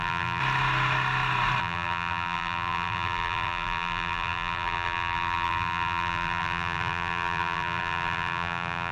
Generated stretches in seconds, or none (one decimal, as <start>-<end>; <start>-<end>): 0.0-0.4; 1.6-8.9